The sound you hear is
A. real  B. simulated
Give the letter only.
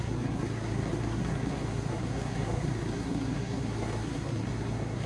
B